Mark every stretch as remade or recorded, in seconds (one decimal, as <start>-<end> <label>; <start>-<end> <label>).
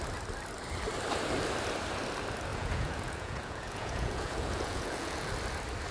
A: 0.0-2.5 recorded; 2.5-5.3 remade; 5.3-5.9 recorded